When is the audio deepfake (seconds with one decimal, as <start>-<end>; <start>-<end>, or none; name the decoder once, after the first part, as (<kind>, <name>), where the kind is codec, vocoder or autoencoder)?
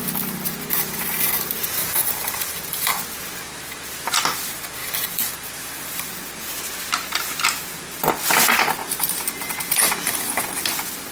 1.8-3.0 (vocoder, BigVGAN v2); 4.8-6.1; 8.8-10.4